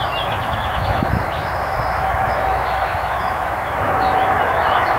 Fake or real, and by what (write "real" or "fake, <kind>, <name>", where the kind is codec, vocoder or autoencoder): fake, autoencoder, DAC-VAE